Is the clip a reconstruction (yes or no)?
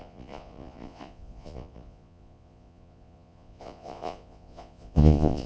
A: yes